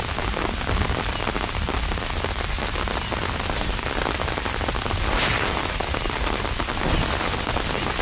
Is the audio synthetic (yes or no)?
no